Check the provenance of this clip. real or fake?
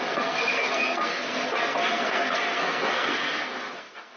fake